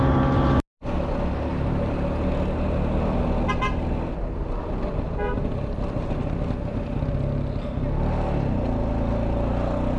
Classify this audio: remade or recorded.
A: recorded